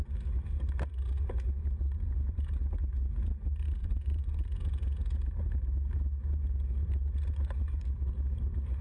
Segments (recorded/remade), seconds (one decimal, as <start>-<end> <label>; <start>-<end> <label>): 0.0-3.8 recorded; 3.8-4.4 remade; 4.4-8.8 recorded